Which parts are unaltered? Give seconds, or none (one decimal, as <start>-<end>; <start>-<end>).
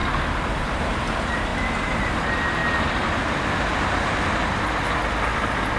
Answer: 2.6-3.6; 5.0-5.8